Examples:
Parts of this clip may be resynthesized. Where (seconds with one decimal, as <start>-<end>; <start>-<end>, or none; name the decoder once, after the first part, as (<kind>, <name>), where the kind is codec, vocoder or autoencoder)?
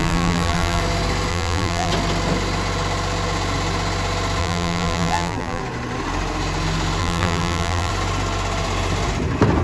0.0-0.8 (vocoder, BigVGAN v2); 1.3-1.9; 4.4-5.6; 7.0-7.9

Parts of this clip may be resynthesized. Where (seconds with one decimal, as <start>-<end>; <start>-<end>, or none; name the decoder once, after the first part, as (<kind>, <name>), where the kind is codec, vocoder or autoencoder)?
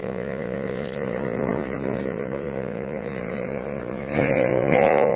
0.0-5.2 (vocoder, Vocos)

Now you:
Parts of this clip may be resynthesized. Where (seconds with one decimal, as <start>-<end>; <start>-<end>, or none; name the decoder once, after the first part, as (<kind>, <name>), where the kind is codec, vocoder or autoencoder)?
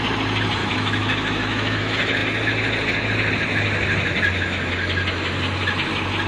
0.6-1.8 (autoencoder, DAC-VAE)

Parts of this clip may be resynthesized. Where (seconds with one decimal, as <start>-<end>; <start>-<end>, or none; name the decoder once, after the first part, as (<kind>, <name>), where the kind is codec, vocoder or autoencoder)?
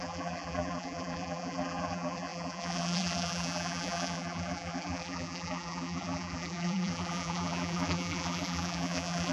0.0-9.3 (vocoder, BigVGAN v2)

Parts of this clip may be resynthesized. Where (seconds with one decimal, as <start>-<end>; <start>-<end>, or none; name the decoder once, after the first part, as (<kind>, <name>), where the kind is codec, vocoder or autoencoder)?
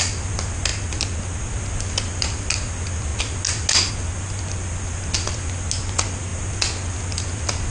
none